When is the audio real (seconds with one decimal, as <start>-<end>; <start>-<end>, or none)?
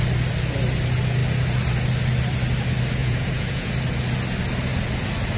0.0-3.0; 3.7-5.4